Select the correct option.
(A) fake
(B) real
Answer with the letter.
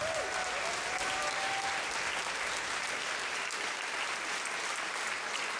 B